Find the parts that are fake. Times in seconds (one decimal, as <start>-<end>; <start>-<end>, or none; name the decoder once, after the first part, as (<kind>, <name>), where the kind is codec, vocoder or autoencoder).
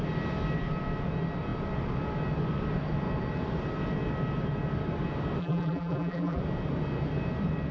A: 5.4-6.4 (vocoder, BigVGAN v2)